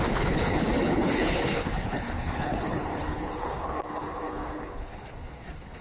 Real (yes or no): no